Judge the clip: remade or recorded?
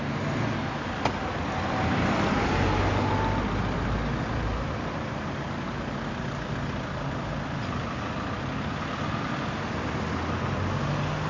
recorded